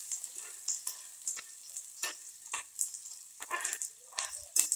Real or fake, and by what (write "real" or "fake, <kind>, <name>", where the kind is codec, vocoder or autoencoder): fake, vocoder, BigVGAN v2